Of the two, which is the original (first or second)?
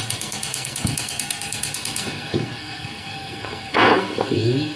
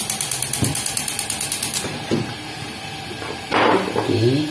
second